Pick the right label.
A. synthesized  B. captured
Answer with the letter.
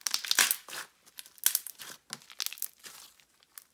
B